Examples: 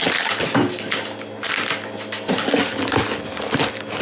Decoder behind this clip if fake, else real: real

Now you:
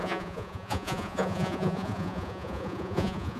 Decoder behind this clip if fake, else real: fake, vocoder, Vocos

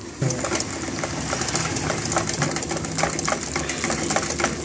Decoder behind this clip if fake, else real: real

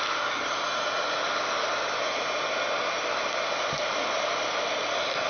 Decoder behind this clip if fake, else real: real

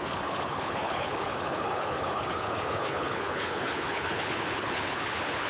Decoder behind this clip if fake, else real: fake, codec, HILCodec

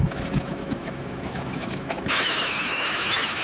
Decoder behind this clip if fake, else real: fake, autoencoder, DAC-VAE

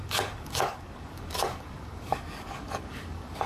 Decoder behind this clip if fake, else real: fake, codec, DAC